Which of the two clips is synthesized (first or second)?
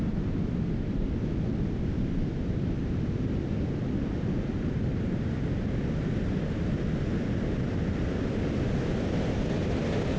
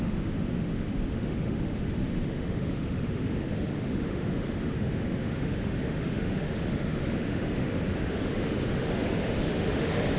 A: second